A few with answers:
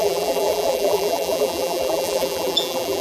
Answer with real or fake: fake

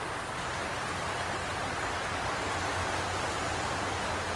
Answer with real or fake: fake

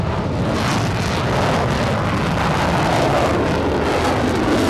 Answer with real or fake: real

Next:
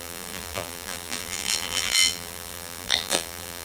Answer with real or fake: fake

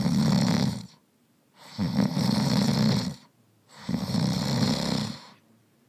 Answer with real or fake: fake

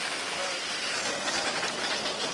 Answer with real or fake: real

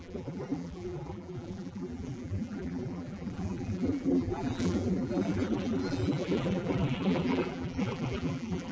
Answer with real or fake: fake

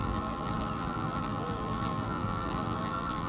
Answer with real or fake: fake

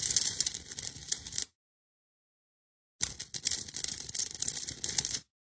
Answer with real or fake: real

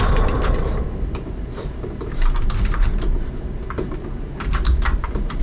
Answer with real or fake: fake